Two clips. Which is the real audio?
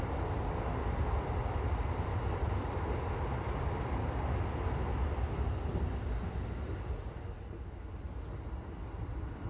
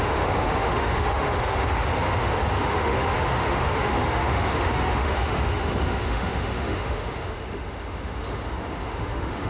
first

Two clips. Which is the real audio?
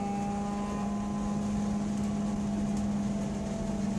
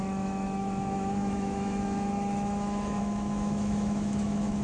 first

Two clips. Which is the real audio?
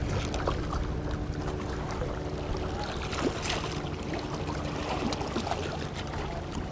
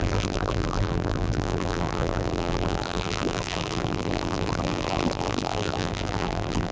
first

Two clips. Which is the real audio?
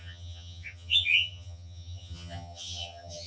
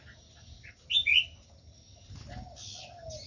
second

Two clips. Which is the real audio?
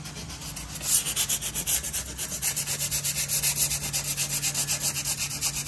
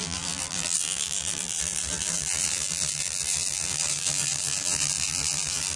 first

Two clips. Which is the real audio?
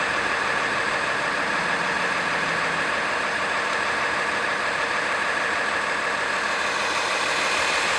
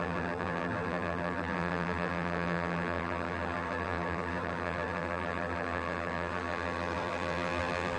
first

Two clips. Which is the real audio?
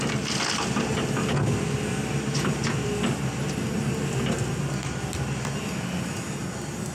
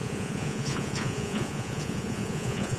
first